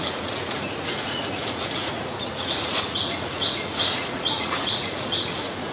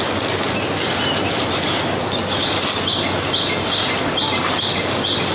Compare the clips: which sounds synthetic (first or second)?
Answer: first